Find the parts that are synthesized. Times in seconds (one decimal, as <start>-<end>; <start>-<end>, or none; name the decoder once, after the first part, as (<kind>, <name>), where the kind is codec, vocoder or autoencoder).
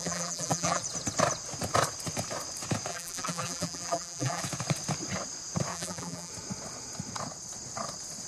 0.0-0.8 (vocoder, BigVGAN v2); 2.9-4.4; 5.7-6.3